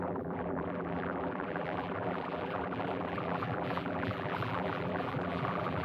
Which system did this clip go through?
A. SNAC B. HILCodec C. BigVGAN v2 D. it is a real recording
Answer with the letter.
C